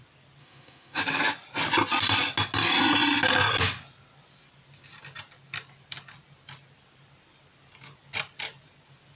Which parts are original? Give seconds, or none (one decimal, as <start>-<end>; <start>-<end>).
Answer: 0.0-0.4; 1.0-9.2